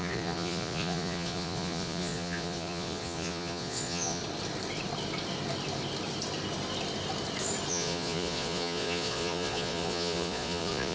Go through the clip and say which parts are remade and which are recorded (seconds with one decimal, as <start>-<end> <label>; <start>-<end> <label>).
0.0-4.2 remade; 4.2-7.7 recorded; 7.7-10.9 remade